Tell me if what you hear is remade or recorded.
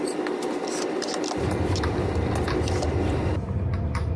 recorded